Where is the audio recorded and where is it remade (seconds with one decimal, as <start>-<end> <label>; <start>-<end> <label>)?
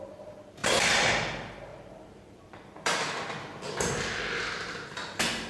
0.0-0.6 recorded; 0.6-1.1 remade; 1.1-1.7 recorded; 1.7-3.1 remade; 3.1-5.5 recorded